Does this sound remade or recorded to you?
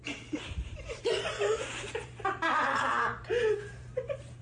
remade